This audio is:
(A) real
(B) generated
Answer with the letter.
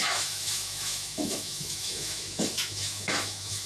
B